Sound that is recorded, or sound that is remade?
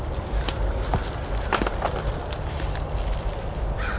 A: recorded